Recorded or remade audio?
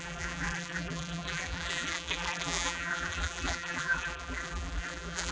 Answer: remade